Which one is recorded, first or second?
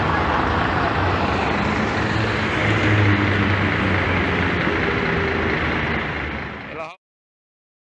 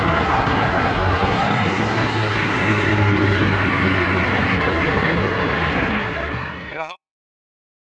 first